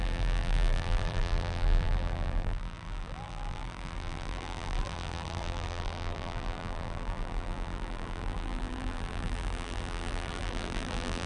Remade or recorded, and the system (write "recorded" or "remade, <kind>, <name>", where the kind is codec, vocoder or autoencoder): remade, vocoder, BigVGAN v2